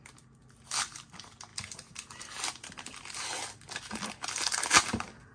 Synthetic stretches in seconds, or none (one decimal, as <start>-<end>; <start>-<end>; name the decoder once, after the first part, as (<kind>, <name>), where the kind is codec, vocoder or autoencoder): none